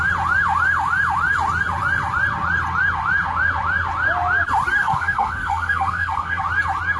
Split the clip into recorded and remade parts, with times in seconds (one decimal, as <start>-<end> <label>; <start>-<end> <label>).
0.0-4.8 recorded; 4.8-6.4 remade; 6.4-7.0 recorded